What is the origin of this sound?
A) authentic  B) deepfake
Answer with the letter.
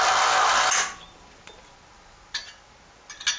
A